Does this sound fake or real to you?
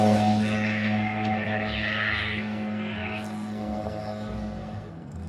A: fake